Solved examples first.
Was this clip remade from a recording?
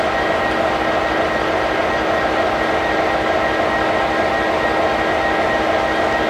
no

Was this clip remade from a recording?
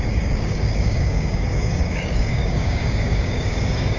yes